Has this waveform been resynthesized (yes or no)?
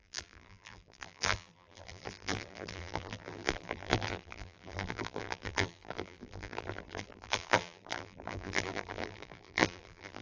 yes